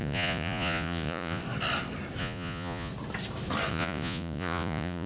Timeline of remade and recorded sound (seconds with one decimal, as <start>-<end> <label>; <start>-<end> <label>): 0.0-1.4 remade; 1.4-2.2 recorded; 2.2-2.9 remade; 2.9-3.7 recorded; 3.7-5.1 remade